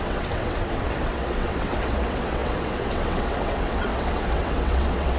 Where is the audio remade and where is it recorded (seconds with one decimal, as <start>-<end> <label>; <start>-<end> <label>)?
0.0-5.2 remade